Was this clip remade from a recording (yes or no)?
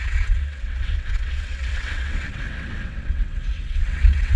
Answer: yes